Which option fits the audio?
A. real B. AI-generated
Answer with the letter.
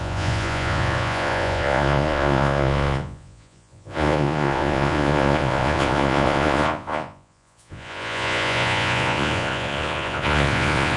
B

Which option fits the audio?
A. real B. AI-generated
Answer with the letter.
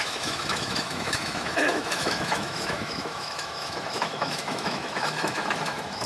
B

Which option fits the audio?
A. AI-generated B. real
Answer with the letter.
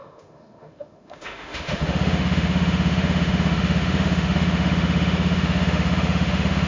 A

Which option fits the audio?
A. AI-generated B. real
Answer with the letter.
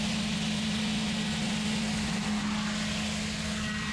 B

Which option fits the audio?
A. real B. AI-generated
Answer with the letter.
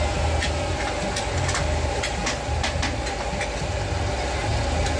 A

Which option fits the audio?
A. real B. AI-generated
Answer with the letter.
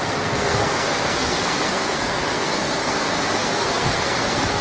B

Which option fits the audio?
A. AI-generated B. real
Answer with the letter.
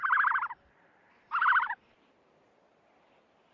A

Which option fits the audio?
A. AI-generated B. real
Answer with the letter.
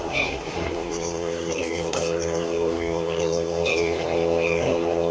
A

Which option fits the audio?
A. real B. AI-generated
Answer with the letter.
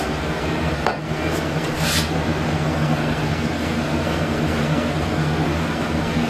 B